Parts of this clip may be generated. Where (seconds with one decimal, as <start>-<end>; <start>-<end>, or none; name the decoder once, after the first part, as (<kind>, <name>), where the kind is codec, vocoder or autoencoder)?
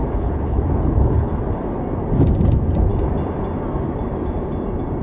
0.0-1.3 (codec, HILCodec)